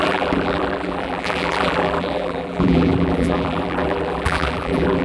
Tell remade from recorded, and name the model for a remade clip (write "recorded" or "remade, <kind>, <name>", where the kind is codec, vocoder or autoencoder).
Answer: remade, vocoder, BigVGAN v2